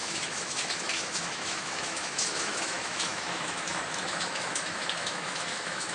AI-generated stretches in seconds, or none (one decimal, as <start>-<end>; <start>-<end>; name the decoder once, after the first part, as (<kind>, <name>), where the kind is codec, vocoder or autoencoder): 0.0-5.9 (autoencoder, DAC-VAE)